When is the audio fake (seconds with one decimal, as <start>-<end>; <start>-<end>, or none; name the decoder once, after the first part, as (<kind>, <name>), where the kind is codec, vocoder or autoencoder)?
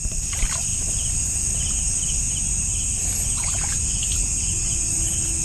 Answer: none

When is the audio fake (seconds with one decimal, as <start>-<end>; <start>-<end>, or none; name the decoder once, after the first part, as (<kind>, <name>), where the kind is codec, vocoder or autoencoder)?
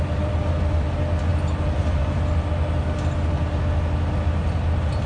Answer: none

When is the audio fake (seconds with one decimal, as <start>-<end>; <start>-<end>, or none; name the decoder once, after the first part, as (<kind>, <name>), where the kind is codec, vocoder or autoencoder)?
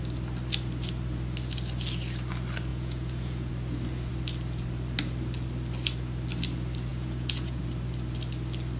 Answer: 2.7-3.5 (vocoder, Vocos); 6.9-7.6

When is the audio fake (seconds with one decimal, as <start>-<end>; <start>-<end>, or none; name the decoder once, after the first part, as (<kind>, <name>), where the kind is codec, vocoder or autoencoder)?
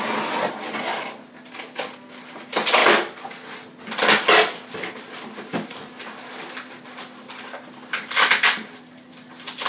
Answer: none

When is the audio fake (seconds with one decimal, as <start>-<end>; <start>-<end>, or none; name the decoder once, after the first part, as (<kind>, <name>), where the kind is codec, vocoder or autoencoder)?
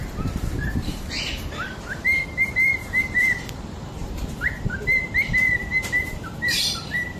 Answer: 0.0-7.2 (vocoder, BigVGAN v2)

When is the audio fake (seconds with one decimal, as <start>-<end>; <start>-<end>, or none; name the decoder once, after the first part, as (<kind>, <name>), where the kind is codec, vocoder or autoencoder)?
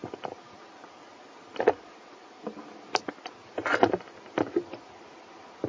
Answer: none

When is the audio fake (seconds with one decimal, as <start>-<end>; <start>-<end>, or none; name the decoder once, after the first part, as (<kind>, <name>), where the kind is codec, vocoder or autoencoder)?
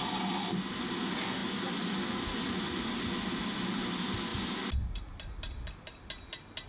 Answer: none